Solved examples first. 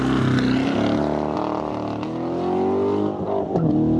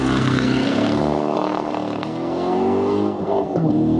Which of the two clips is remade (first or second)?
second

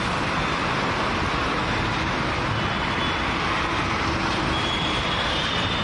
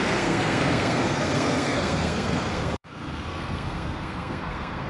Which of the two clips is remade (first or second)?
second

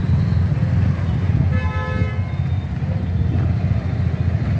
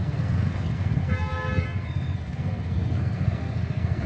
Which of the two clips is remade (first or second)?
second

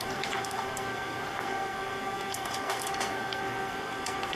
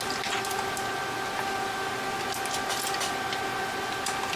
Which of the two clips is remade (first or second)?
first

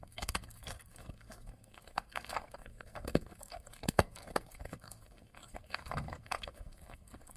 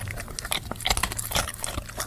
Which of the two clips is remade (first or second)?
first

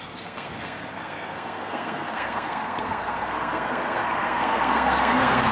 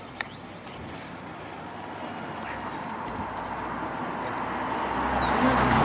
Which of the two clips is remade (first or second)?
first